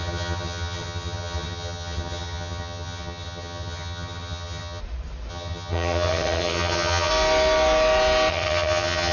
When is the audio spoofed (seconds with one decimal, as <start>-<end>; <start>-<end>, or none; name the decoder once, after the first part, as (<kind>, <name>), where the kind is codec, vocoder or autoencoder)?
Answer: 0.0-4.8 (vocoder, HiFi-GAN); 5.3-7.1; 8.3-9.1